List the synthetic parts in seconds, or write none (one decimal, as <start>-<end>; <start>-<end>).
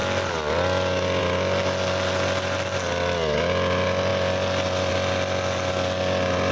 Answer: none